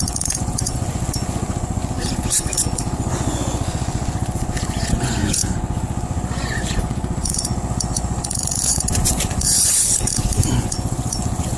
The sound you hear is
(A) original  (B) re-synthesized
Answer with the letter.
B